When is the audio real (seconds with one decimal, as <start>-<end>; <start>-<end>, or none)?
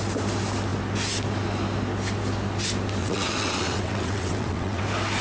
0.0-3.0; 4.8-5.2